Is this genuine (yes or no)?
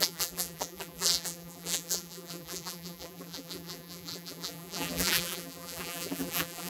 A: no